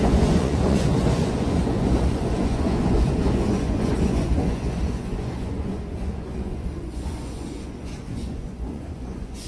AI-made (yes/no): yes